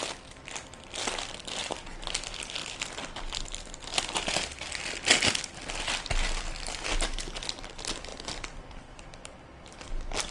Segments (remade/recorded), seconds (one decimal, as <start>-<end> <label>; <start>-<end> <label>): 0.0-2.6 recorded; 2.6-3.4 remade; 3.4-8.1 recorded; 8.1-10.3 remade